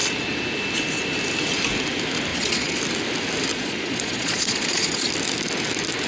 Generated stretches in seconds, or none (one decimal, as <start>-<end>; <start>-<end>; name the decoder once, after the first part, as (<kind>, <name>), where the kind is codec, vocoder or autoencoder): 2.3-2.8 (vocoder, Vocos); 3.5-5.1